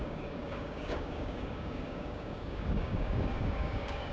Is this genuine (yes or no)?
no